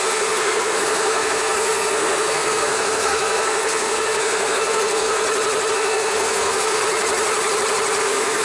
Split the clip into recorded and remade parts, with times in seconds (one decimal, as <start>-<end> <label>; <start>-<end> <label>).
0.0-5.2 remade; 5.2-5.7 recorded; 5.7-6.8 remade; 6.8-8.0 recorded; 8.0-8.4 remade